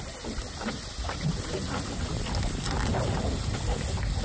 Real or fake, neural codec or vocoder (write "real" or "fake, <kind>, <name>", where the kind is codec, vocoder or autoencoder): real